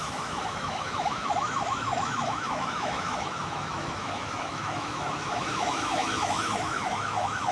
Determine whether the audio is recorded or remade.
remade